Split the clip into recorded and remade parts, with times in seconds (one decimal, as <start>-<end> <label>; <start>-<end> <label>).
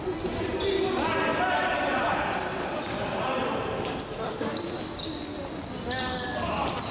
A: 0.0-6.9 recorded